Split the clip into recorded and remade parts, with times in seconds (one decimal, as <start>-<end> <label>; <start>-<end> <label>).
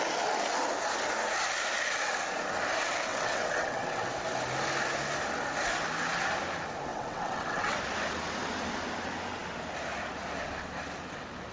0.0-3.1 recorded; 3.1-4.1 remade; 4.1-6.9 recorded; 6.9-7.8 remade; 7.8-11.5 recorded